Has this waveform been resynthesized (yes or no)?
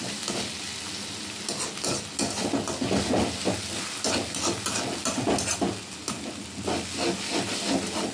no